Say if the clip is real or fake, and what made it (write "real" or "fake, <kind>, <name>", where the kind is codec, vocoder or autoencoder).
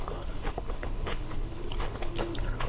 fake, codec, HILCodec